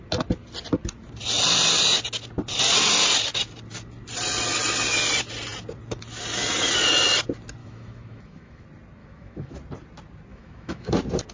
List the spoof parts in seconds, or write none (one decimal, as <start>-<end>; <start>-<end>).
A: 7.6-8.6; 9.0-9.5; 10.3-10.9